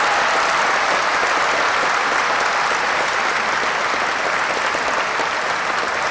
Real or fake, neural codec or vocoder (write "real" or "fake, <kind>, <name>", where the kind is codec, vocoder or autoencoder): real